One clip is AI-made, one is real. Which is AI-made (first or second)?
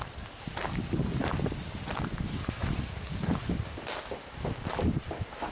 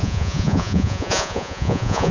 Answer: second